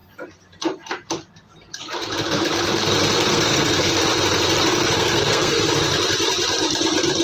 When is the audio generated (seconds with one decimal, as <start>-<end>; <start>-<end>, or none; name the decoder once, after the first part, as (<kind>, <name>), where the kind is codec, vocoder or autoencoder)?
3.3-3.9 (codec, SNAC); 4.7-5.6